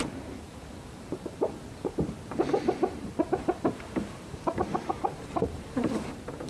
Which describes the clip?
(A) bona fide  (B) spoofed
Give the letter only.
B